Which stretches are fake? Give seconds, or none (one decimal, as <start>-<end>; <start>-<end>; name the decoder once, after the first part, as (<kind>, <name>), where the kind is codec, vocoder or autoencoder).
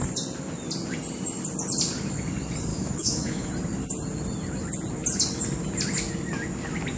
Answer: 2.7-3.5 (autoencoder, DAC-VAE)